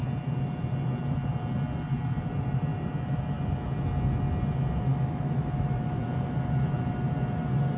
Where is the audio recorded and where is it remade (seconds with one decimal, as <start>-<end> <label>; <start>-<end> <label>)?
0.0-4.9 recorded; 4.9-6.0 remade; 6.0-7.8 recorded